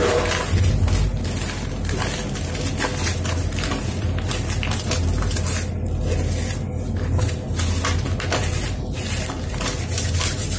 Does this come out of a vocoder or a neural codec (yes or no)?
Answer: no